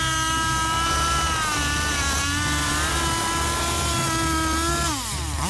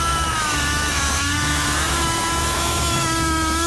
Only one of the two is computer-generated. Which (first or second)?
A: second